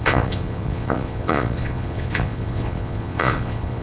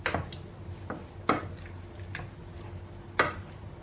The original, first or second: second